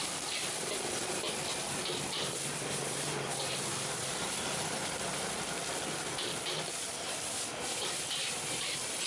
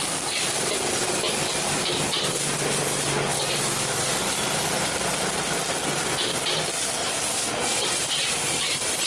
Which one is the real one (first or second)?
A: second